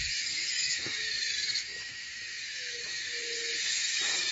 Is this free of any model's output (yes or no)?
no